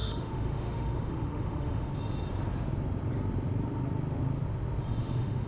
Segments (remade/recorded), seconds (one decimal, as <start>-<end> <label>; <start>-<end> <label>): 0.0-1.9 remade; 1.9-5.0 recorded; 5.0-5.5 remade

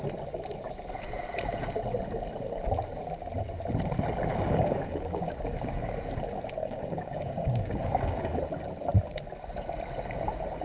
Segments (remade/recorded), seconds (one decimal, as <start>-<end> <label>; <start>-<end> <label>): 0.0-4.3 recorded; 4.3-6.0 remade; 6.0-6.6 recorded; 6.6-8.4 remade; 8.4-10.6 recorded

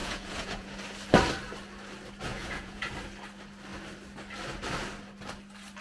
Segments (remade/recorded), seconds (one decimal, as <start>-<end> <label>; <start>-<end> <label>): 0.0-0.8 remade; 0.8-2.3 recorded; 2.3-2.9 remade; 2.9-5.8 recorded

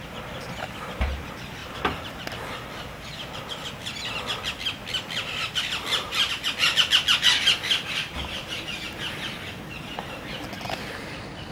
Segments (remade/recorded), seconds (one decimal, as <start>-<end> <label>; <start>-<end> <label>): 0.0-11.5 recorded

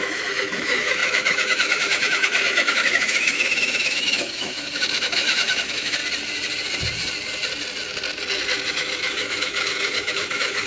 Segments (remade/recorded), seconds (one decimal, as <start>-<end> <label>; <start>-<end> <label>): 0.0-6.0 remade; 6.0-8.7 recorded; 8.7-10.7 remade

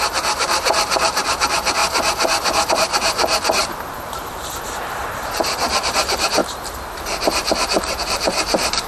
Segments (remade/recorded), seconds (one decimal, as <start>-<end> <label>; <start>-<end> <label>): 0.0-1.8 remade; 1.8-2.7 recorded; 2.7-8.9 remade

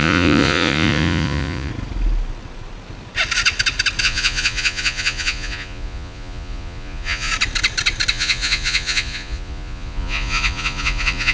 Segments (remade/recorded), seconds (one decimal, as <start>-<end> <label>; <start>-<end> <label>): 0.0-1.7 remade; 1.7-4.0 recorded; 4.0-7.3 remade; 7.3-8.1 recorded; 8.1-11.3 remade